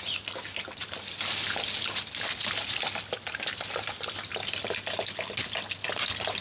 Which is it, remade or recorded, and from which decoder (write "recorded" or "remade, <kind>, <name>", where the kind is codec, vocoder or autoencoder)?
recorded